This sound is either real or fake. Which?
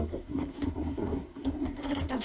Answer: fake